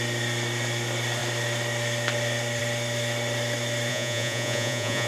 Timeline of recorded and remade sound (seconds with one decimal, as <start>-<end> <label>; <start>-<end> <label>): 0.0-3.9 recorded; 3.9-5.1 remade